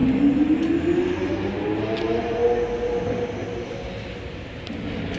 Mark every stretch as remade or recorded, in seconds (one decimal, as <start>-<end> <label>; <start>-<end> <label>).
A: 0.0-5.2 recorded